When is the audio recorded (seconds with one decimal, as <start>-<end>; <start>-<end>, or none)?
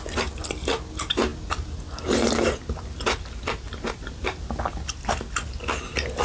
0.0-6.2